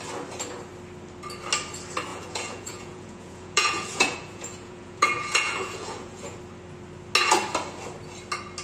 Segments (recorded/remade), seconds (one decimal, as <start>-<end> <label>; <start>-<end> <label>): 0.0-2.1 recorded; 2.1-6.4 remade; 6.4-8.6 recorded